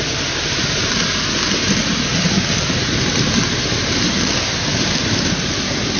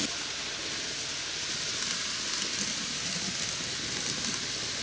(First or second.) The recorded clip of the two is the second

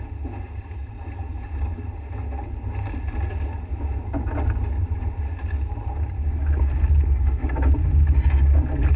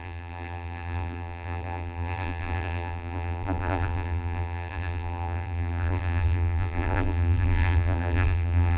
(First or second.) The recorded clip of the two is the first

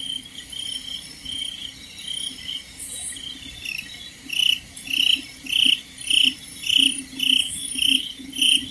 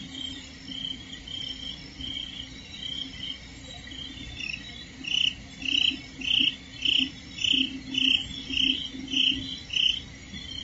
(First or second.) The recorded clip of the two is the second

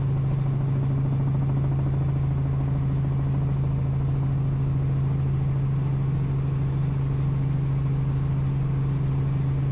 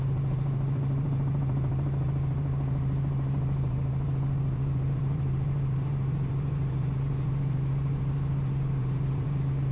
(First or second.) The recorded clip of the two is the first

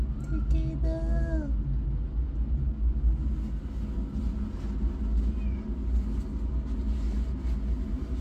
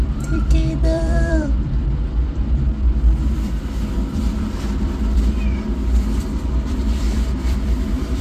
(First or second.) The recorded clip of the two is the first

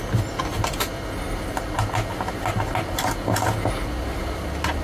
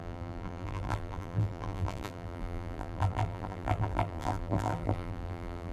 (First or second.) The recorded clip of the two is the first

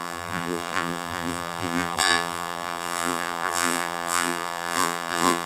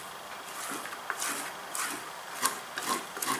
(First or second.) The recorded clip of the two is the second